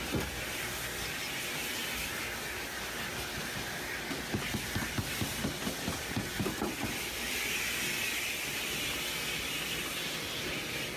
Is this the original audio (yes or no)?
yes